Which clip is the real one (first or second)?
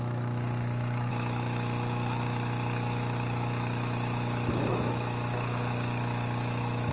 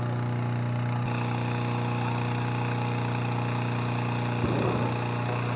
second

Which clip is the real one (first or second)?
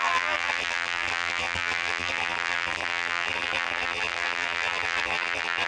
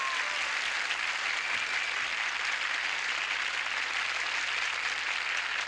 second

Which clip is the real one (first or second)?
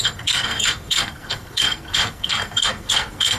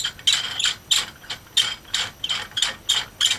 second